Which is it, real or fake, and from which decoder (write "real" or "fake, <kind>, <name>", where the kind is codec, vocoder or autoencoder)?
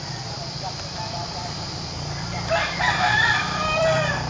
fake, vocoder, BigVGAN v2